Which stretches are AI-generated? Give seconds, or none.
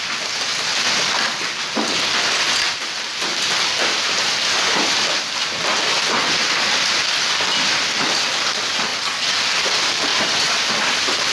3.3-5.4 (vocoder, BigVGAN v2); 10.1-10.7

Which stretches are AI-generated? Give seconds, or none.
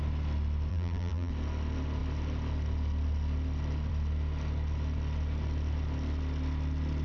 0.7-1.3 (vocoder, BigVGAN v2)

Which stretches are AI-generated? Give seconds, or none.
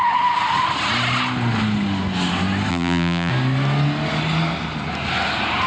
2.7-3.3 (vocoder, BigVGAN v2)